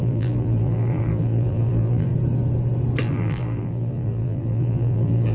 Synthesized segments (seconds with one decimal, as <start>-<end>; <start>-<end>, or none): 0.0-2.1; 3.0-5.3